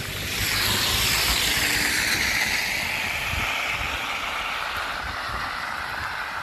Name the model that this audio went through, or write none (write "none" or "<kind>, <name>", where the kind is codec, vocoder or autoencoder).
none